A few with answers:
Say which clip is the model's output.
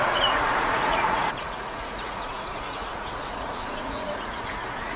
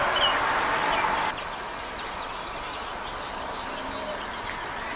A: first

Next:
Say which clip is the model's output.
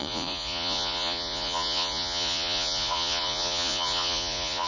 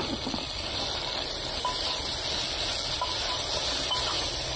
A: first